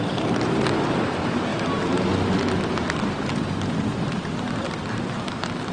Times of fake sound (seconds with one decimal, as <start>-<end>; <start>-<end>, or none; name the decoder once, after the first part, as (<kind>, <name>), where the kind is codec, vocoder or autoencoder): 0.0-1.5 (vocoder, BigVGAN v2); 3.0-3.9